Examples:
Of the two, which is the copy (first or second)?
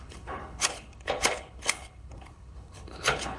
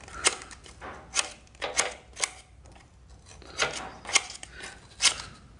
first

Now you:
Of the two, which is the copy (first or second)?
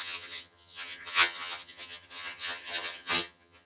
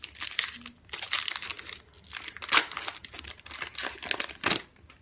first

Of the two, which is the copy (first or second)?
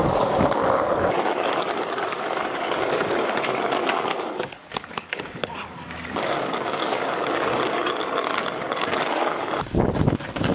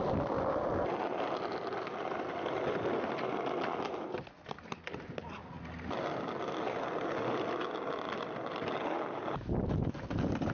first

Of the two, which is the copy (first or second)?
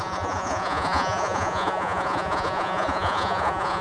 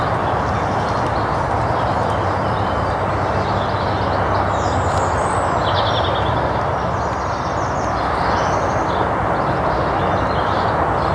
first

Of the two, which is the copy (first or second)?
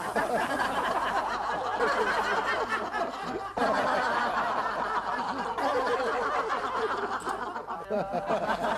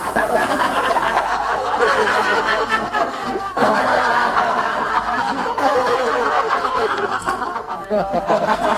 second